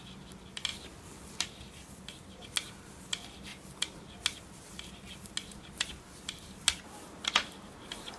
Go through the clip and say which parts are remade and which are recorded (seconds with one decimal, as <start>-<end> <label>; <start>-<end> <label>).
0.0-8.2 recorded